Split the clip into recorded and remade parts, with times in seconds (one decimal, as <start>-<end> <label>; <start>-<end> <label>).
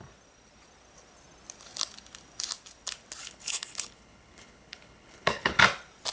0.0-3.2 recorded; 3.2-5.6 remade; 5.6-6.1 recorded